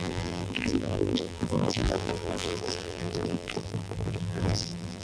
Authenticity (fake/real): fake